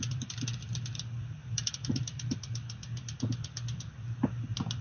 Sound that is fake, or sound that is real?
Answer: fake